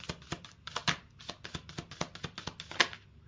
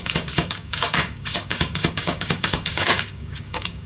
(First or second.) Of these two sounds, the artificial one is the second